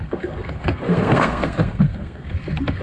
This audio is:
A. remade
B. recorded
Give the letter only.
A